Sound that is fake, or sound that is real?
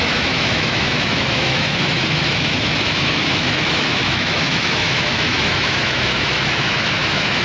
fake